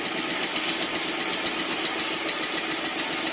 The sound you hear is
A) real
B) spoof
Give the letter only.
A